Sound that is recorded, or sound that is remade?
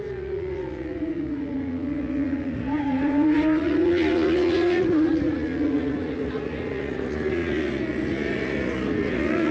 remade